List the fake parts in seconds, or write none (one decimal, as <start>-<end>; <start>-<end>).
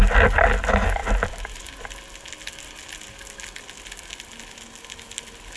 none